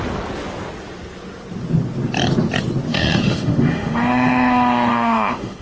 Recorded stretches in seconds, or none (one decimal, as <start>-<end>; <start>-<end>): 0.0-2.9

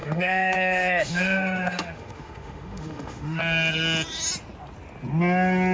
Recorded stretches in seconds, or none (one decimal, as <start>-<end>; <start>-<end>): 3.4-5.7